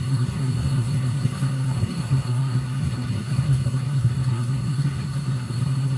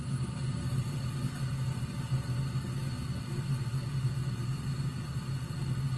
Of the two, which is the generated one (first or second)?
first